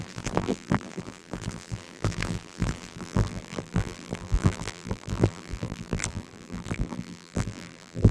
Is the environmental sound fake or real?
fake